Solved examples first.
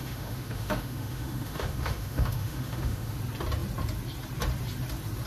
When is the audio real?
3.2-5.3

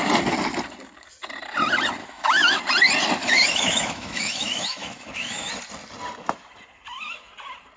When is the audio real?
0.0-2.0; 2.6-3.2; 5.5-7.8